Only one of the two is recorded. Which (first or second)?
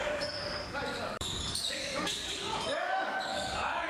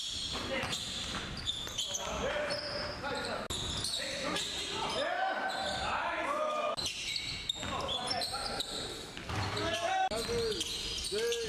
second